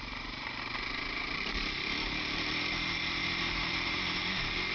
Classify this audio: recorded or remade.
remade